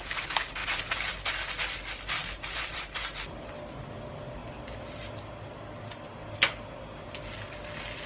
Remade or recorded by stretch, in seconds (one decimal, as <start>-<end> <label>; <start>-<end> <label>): 0.0-2.2 recorded; 2.2-3.2 remade; 3.2-8.1 recorded